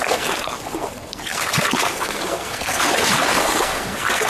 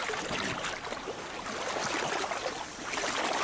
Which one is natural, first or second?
second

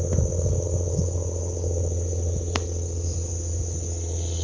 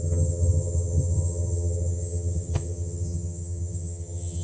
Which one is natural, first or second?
first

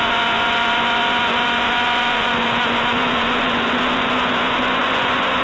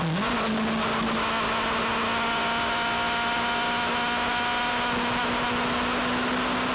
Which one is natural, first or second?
second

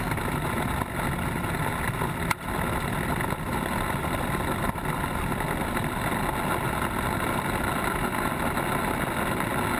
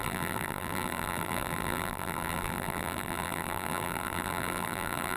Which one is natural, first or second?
first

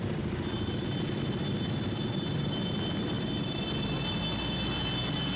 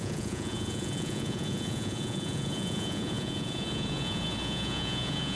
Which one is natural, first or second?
first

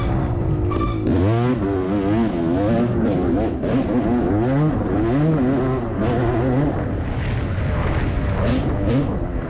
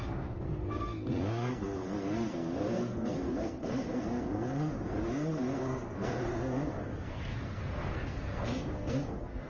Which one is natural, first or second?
first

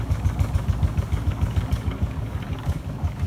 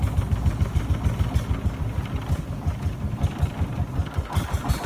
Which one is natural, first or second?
second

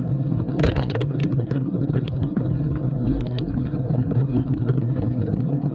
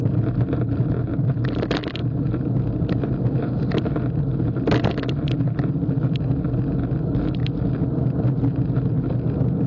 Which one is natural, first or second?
second